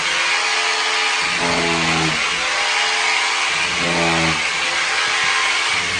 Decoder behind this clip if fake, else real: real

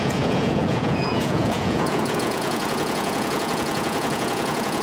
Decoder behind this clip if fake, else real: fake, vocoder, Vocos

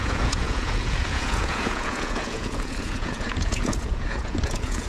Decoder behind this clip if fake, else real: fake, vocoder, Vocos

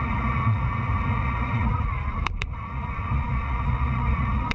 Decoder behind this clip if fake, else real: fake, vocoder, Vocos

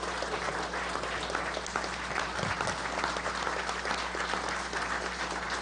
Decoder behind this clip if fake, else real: real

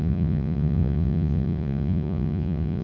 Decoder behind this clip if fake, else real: fake, vocoder, Vocos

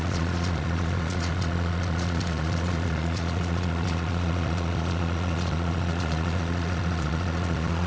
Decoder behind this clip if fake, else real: fake, vocoder, Vocos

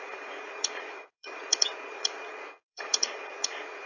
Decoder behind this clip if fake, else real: fake, vocoder, Vocos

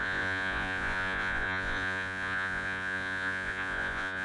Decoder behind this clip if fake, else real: fake, vocoder, Vocos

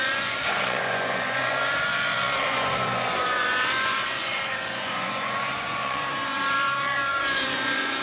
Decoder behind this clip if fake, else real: fake, vocoder, Vocos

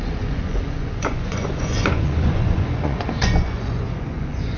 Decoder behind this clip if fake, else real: fake, vocoder, Vocos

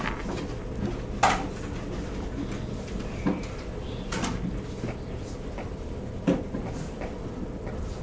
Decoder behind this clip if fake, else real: real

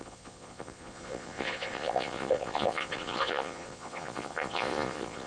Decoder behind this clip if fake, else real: fake, vocoder, Vocos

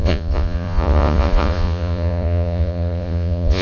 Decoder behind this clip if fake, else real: fake, vocoder, Vocos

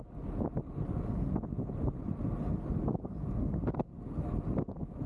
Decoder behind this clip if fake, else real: real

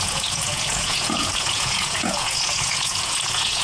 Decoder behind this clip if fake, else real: fake, vocoder, Vocos